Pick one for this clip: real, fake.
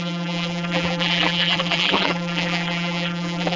fake